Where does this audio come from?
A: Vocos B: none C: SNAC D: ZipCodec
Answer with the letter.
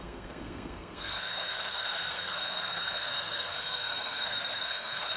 C